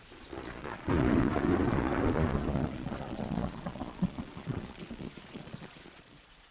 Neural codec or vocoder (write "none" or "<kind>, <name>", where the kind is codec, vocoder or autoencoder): vocoder, Vocos